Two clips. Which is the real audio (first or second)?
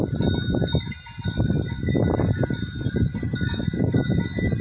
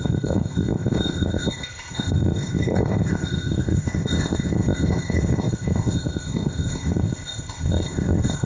first